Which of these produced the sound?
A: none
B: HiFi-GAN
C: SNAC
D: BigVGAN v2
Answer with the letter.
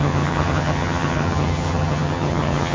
B